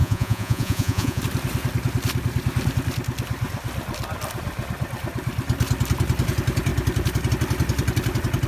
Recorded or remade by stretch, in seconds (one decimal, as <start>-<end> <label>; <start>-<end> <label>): 0.0-1.2 remade; 1.2-8.5 recorded